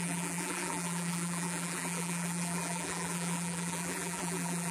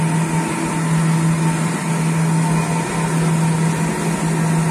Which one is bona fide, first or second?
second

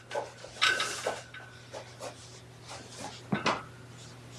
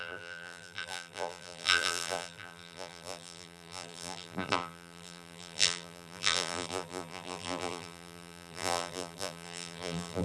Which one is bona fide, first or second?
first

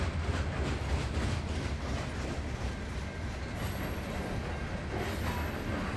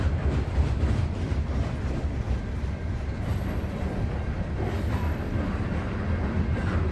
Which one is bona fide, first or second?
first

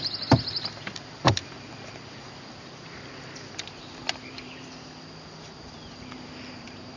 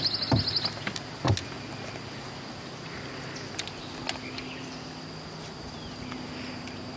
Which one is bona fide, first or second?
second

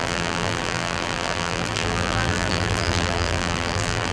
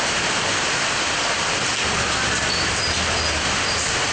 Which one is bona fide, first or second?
second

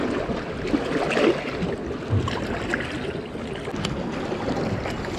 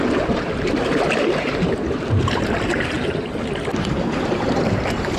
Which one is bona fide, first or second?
first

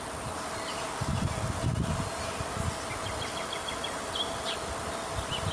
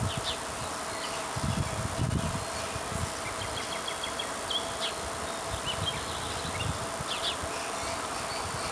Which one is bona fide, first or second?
second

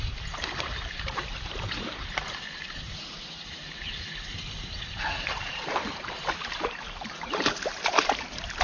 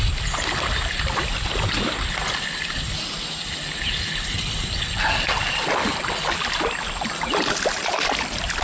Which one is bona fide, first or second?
second